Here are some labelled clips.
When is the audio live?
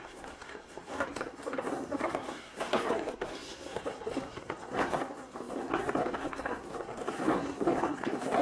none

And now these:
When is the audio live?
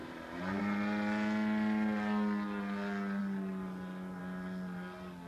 0.6-5.3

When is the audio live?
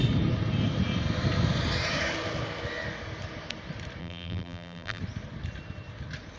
0.0-4.0; 5.0-6.4